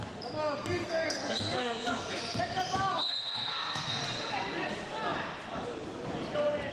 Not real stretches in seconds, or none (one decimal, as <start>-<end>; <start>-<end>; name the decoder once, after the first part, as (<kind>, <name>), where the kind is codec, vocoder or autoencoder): 0.4-2.4 (codec, SNAC); 2.9-4.0